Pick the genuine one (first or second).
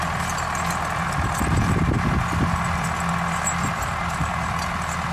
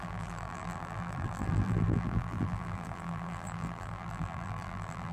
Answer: first